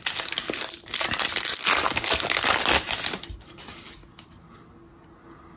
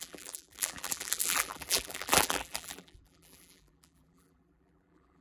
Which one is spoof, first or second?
second